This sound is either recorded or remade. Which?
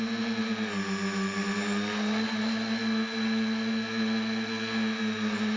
recorded